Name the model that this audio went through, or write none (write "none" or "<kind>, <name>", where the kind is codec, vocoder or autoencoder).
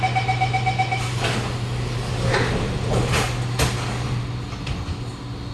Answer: none